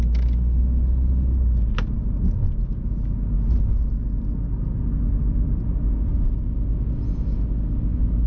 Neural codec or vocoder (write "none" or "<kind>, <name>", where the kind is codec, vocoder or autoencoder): none